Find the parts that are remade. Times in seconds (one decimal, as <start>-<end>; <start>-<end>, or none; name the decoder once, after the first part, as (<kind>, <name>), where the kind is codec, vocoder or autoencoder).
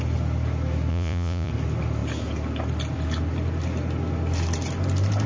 0.9-1.5 (vocoder, Vocos)